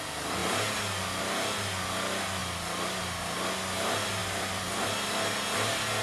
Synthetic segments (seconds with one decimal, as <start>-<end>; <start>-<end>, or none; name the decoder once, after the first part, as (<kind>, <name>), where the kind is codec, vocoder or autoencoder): 4.2-4.8 (vocoder, BigVGAN v2)